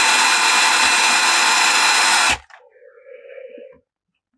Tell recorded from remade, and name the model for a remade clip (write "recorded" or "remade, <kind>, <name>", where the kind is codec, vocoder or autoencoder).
recorded